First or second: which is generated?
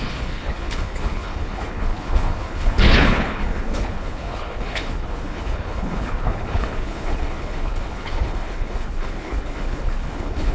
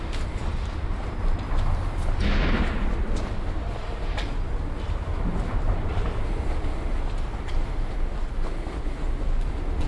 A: first